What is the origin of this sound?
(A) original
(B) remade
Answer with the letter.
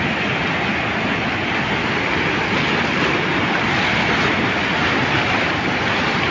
A